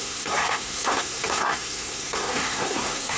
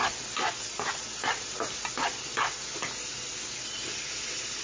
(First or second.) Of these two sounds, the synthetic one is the first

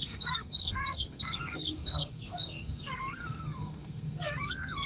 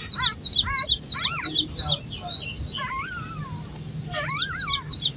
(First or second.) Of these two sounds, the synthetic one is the first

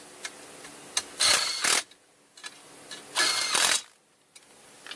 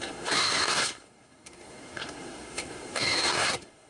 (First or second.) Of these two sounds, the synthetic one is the second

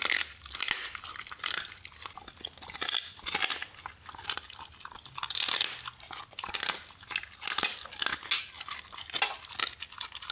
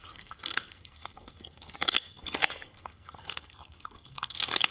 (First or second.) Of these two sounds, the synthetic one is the second